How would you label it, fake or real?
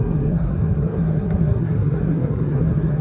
fake